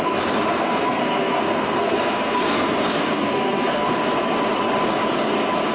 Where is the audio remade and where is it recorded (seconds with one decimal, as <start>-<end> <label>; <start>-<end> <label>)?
0.0-0.5 recorded; 0.5-3.9 remade; 3.9-5.7 recorded